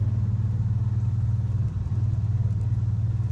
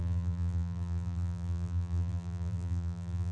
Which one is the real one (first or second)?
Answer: first